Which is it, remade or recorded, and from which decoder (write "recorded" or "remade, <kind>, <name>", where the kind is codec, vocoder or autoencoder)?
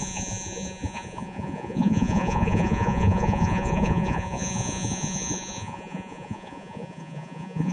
remade, vocoder, Vocos